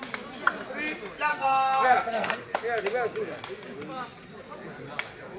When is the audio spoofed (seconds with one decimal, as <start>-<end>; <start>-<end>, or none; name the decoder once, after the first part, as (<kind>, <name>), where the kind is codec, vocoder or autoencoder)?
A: 1.3-2.4 (codec, SNAC)